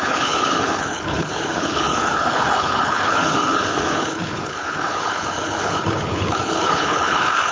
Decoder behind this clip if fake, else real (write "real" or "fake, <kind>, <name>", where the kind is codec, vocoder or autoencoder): fake, codec, HILCodec